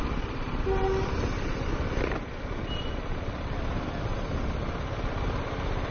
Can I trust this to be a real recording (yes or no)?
yes